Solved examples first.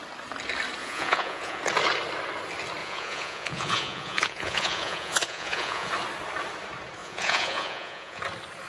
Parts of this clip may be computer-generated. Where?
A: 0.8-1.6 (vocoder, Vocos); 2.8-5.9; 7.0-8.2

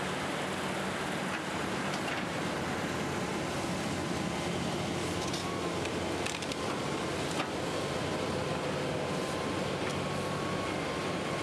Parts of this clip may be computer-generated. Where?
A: none